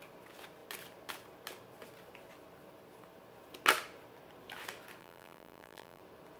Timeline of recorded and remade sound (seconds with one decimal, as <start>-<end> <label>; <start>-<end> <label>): 0.0-5.0 recorded; 5.0-6.0 remade; 6.0-6.4 recorded